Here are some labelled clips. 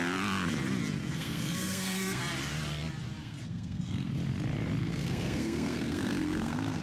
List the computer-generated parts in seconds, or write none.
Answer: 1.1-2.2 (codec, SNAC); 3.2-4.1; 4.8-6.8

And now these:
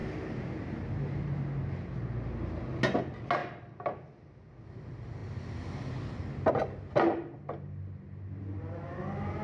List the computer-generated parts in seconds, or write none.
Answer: none

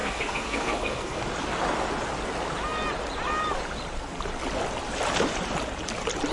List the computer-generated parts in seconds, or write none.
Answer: 0.0-1.2 (codec, SNAC)

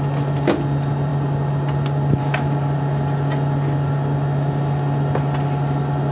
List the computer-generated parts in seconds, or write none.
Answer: none

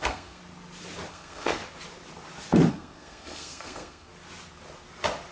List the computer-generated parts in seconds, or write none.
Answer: 0.0-0.4 (codec, SNAC); 1.1-1.6; 2.7-4.1

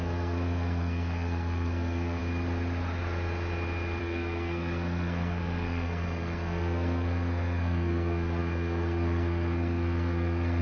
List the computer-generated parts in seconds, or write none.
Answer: 0.0-2.2 (codec, SNAC); 4.0-10.6

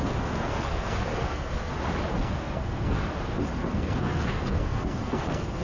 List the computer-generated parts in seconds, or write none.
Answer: 0.0-1.7 (codec, SNAC); 2.2-3.0; 3.6-5.6